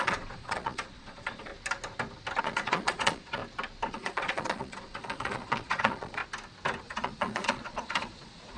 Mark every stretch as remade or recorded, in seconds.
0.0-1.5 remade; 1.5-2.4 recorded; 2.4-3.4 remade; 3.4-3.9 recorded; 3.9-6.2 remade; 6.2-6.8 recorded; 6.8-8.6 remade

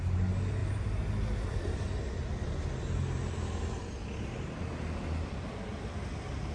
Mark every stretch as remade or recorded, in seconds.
0.0-6.5 recorded

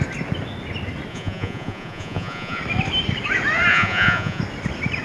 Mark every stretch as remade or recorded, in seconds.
0.0-1.1 recorded; 1.1-2.6 remade; 2.6-3.7 recorded; 3.7-4.4 remade; 4.4-5.0 recorded

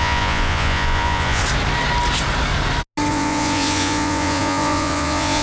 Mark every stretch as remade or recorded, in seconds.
0.0-1.4 remade; 1.4-3.1 recorded; 3.1-5.4 remade

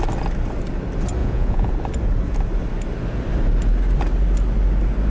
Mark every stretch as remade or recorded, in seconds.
0.0-1.2 recorded; 1.2-1.7 remade; 1.7-5.1 recorded